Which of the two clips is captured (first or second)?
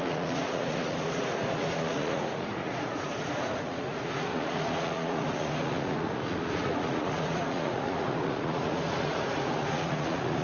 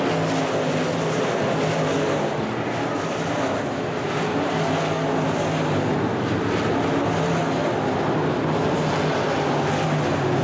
second